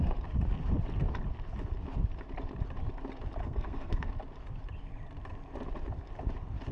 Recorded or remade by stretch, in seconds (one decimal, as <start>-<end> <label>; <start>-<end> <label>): 0.0-3.4 recorded; 3.4-4.1 remade; 4.1-6.7 recorded